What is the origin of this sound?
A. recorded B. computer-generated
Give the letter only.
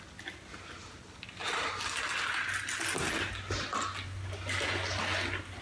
A